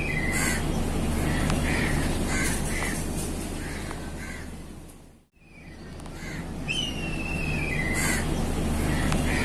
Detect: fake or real real